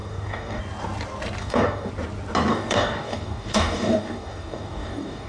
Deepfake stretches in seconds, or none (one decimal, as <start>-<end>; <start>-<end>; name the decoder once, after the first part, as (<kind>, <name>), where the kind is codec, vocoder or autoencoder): 0.0-0.6 (codec, DAC); 1.4-1.9; 2.5-5.3